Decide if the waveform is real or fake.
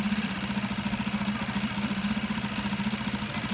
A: real